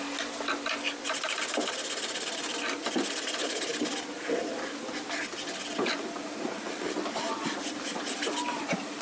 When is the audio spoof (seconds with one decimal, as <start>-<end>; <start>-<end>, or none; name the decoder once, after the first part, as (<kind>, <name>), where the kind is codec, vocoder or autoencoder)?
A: none